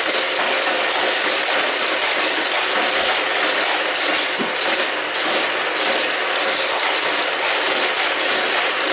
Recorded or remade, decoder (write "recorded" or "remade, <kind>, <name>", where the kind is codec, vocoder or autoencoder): recorded